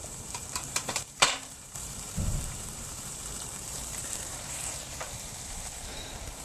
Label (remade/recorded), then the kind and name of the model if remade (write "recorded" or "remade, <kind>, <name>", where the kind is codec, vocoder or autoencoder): remade, vocoder, BigVGAN v2